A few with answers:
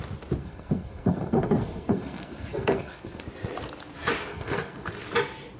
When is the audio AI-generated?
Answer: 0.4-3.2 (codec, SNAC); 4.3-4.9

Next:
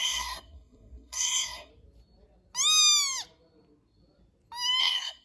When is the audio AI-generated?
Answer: 0.0-1.7 (codec, SNAC); 4.8-5.2

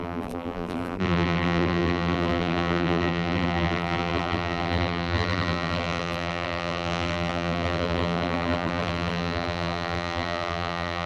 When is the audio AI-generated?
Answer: 0.0-11.1 (vocoder, BigVGAN v2)

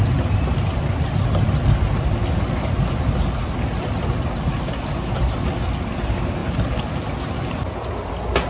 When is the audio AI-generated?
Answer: none

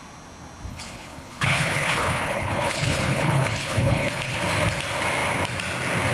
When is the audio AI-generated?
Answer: 0.7-4.4 (codec, HILCodec)

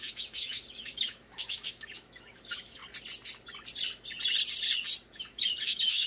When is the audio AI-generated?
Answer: 0.0-2.8 (autoencoder, DAC-VAE); 5.1-6.1